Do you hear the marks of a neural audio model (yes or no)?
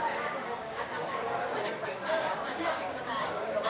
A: yes